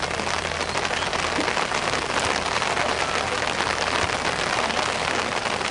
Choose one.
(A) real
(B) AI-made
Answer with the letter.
A